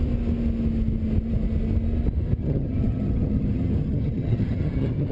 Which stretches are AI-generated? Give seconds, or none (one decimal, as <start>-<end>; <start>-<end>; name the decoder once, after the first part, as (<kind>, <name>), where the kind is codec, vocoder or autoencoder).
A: 2.4-5.1 (vocoder, HiFi-GAN)